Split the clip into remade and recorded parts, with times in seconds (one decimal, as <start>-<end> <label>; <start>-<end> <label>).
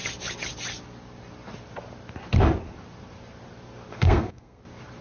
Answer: 0.0-3.9 recorded; 3.9-4.6 remade; 4.6-5.0 recorded